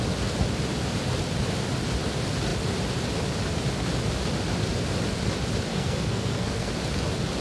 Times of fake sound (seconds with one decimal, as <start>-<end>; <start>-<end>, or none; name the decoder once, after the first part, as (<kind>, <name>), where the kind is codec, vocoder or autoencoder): 5.7-6.7 (codec, SNAC)